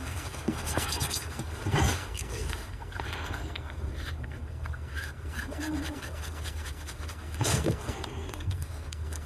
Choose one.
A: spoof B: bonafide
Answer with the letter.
A